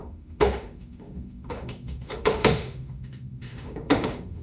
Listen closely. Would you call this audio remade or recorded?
remade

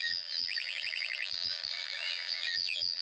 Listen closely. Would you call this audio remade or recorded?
remade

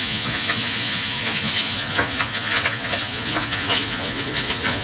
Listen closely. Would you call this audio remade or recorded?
remade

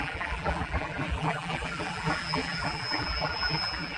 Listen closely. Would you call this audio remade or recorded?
remade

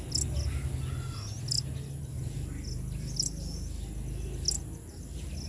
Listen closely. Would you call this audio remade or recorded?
recorded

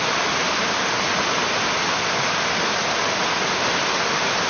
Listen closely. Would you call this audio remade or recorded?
recorded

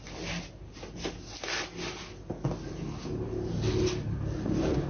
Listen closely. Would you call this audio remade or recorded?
recorded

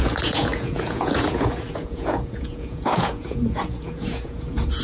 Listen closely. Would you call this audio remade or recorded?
remade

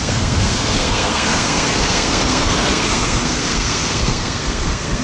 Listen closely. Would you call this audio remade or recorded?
remade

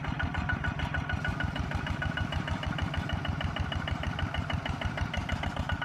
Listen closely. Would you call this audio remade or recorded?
recorded